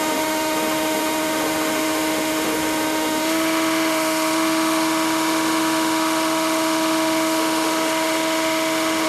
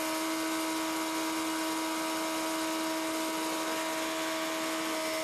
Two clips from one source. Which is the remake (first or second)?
first